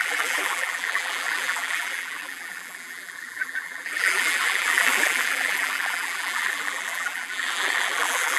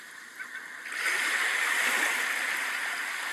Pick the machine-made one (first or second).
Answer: first